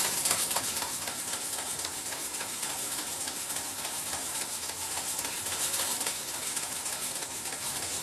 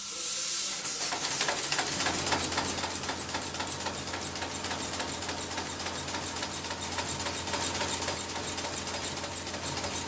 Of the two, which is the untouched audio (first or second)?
second